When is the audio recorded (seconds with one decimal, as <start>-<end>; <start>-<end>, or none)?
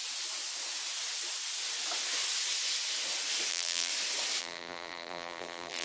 0.0-3.5; 3.9-4.4